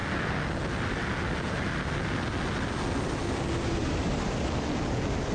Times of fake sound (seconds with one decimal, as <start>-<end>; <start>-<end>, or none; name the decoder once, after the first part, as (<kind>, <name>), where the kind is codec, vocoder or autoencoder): 3.8-5.3 (vocoder, BigVGAN v2)